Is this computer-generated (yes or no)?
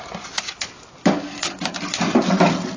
no